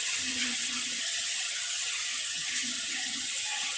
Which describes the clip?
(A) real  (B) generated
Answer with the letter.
B